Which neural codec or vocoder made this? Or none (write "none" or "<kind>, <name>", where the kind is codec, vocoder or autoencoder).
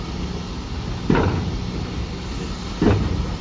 none